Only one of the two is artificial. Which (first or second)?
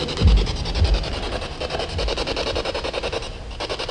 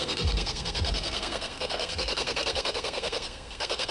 second